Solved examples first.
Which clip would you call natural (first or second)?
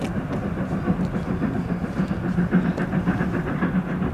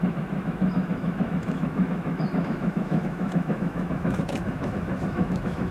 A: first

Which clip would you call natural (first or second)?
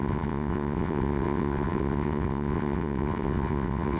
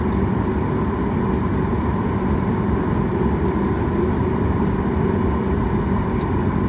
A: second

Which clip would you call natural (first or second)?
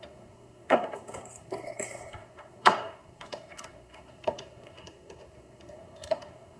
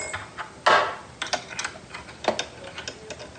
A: second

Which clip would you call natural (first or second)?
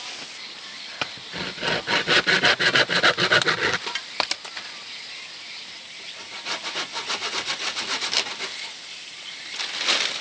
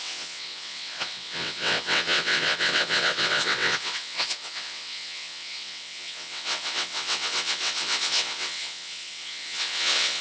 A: first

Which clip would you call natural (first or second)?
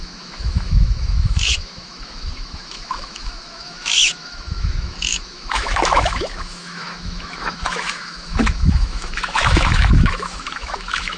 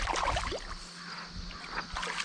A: second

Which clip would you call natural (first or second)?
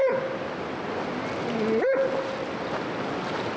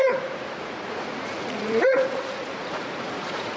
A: first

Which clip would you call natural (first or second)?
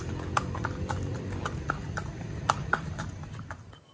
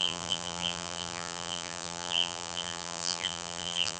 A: first